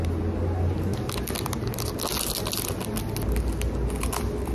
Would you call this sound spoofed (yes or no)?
no